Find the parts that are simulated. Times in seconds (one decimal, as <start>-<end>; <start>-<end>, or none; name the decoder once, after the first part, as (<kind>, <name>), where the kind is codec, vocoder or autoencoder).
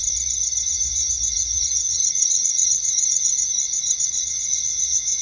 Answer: 0.6-5.2 (vocoder, Vocos)